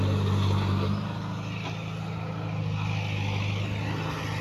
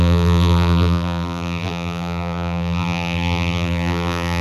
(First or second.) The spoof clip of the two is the second